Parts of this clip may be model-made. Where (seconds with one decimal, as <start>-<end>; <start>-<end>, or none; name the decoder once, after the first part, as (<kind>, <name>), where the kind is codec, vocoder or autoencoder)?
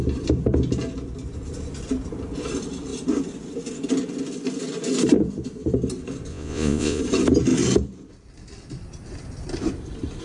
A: 6.3-7.0 (vocoder, Vocos)